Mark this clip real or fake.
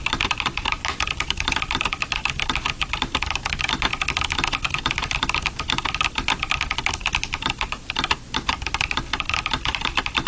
real